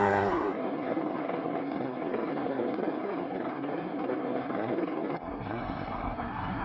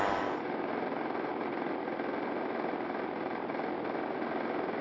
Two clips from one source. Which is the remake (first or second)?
first